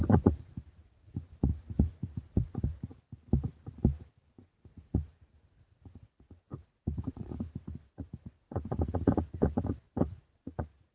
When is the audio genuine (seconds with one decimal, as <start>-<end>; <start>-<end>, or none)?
2.9-4.4